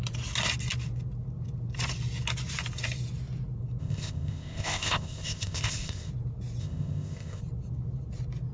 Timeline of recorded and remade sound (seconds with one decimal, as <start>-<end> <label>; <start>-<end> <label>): 0.0-3.8 recorded; 3.8-6.1 remade; 6.1-6.6 recorded; 6.6-7.4 remade; 7.4-8.5 recorded